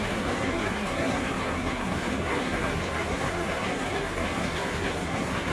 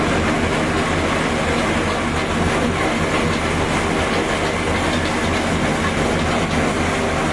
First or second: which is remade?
first